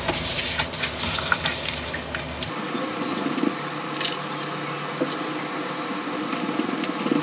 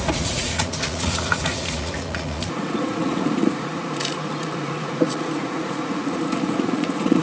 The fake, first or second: second